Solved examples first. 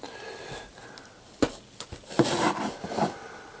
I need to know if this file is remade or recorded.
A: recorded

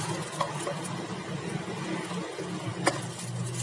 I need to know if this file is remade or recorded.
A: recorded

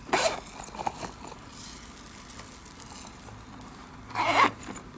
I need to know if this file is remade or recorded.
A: recorded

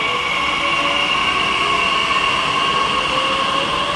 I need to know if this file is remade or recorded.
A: recorded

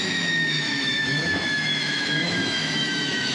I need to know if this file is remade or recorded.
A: remade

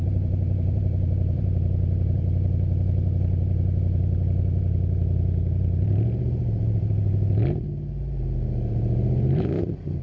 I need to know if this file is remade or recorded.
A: remade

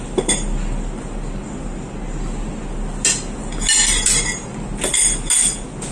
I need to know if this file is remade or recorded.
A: recorded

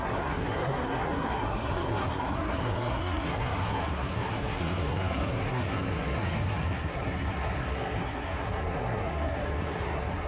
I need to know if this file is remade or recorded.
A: remade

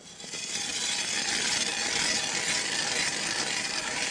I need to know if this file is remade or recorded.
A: recorded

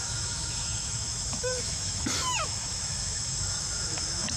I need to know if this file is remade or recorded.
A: remade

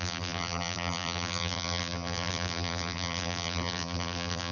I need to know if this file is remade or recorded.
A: remade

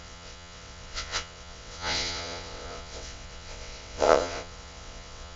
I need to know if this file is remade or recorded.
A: remade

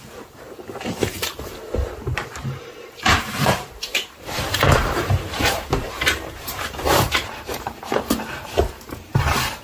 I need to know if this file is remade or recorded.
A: remade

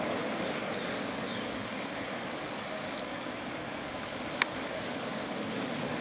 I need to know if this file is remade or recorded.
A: remade